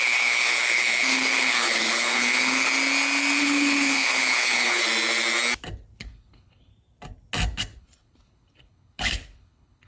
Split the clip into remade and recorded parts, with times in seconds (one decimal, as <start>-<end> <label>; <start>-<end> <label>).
0.0-2.7 remade; 2.7-3.4 recorded; 3.4-4.8 remade; 4.8-6.0 recorded; 6.0-6.7 remade; 6.7-7.8 recorded; 7.8-9.9 remade